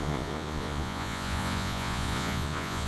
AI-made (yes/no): yes